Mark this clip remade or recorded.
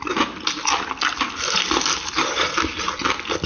recorded